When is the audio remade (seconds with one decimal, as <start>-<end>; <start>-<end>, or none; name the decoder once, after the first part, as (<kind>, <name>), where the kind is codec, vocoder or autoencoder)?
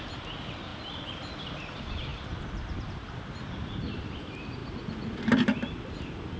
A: none